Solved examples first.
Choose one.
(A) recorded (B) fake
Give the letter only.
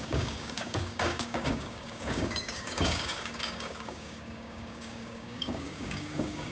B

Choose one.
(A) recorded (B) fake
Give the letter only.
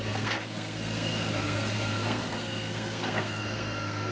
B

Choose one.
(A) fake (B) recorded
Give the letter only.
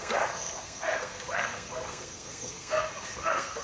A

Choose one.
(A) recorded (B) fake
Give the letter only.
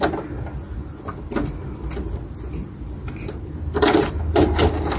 A